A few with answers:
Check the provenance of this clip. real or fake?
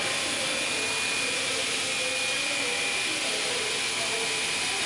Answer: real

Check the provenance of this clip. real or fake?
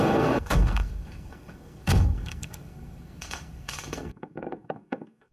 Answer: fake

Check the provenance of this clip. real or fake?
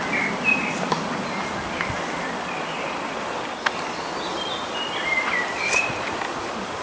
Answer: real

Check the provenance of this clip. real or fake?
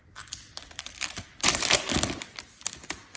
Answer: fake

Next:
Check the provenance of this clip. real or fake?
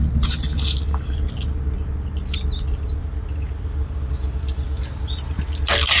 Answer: real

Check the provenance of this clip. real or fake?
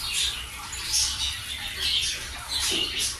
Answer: real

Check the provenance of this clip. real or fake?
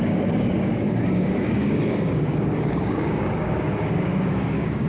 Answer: fake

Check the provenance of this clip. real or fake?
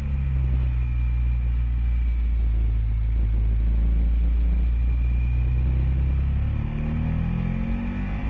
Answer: real